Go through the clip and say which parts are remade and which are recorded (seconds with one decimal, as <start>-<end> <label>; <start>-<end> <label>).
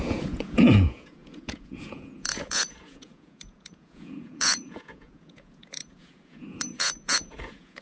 0.0-7.8 remade